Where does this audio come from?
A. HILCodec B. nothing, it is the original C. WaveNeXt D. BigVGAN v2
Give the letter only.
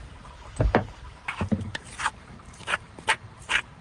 D